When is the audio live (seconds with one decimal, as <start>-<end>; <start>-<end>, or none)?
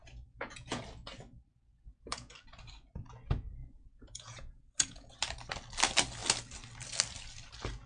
0.8-1.5; 2.3-3.6; 5.1-7.9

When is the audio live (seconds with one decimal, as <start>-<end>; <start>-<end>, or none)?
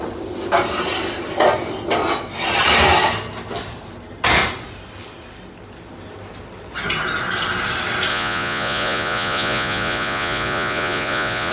0.0-8.1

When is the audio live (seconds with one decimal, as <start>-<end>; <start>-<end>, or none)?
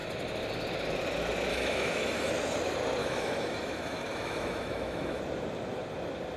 0.0-1.5; 2.3-3.0; 5.2-6.4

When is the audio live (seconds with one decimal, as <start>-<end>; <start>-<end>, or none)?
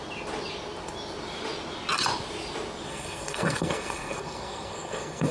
0.0-2.9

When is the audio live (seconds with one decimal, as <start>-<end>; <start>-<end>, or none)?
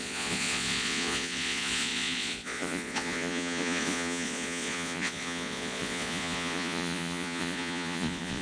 none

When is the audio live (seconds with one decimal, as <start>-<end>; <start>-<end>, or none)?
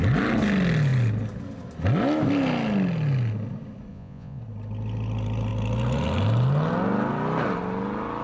0.0-3.9; 4.4-8.2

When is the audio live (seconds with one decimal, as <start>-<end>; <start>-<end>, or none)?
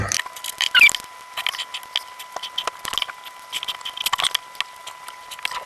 0.0-5.7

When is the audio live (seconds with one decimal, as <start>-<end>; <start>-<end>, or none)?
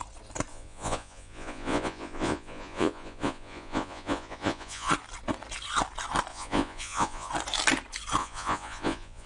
0.0-0.5; 4.9-6.3; 7.3-8.2